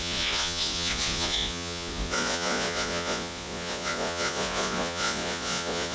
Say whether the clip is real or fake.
fake